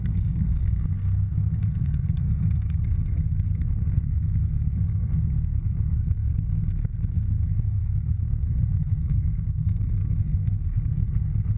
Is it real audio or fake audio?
fake